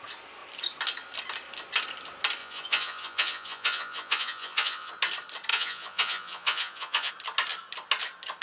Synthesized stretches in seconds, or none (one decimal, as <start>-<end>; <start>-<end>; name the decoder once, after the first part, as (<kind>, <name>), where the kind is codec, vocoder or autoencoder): 2.4-4.9 (vocoder, Vocos); 5.5-7.1